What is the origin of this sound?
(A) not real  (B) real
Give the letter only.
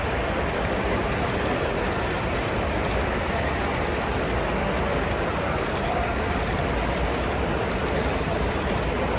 B